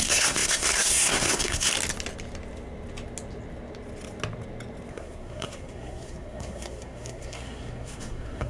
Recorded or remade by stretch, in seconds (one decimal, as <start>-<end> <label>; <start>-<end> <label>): 0.0-1.7 remade; 1.7-4.9 recorded; 4.9-8.5 remade

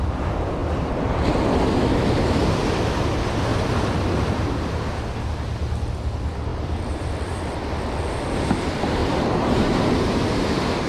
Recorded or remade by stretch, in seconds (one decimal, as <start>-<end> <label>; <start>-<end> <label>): 0.0-0.6 recorded; 0.6-1.3 remade; 1.3-3.5 recorded; 3.5-4.3 remade; 4.3-6.5 recorded; 6.5-7.1 remade; 7.1-9.0 recorded; 9.0-9.7 remade; 9.7-10.9 recorded

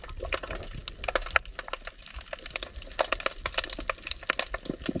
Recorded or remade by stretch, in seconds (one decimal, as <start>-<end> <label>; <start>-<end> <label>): 0.0-5.0 recorded

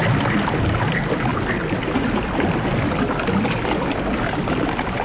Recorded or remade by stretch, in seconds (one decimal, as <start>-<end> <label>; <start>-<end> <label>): 0.0-5.0 recorded

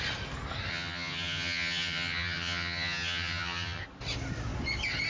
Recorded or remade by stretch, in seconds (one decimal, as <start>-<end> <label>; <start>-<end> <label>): 0.0-0.7 recorded; 0.7-3.8 remade; 3.8-5.1 recorded